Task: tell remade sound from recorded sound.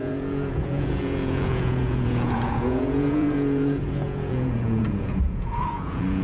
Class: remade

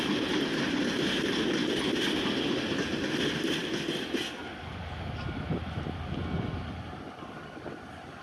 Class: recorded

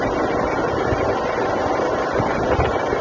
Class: recorded